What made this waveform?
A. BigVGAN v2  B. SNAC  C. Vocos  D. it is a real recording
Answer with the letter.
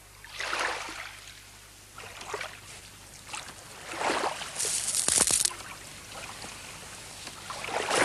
D